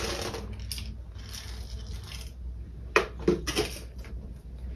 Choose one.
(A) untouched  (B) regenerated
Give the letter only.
A